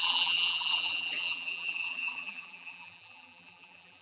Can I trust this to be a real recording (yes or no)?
no